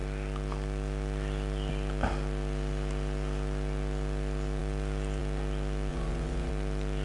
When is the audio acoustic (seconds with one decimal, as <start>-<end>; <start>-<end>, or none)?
0.0-5.9; 6.5-7.0